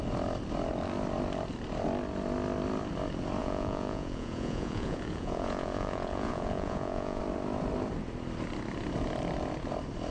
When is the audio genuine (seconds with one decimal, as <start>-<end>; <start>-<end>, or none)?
0.0-3.4; 7.2-10.1